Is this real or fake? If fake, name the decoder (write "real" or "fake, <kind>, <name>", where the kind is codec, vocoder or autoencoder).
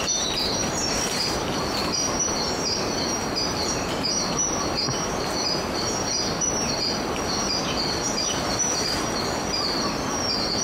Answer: real